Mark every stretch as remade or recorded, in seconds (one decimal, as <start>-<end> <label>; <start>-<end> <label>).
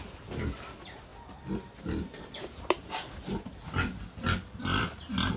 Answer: 0.0-5.4 recorded